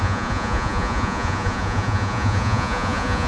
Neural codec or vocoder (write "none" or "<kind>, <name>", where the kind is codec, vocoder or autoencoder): vocoder, Vocos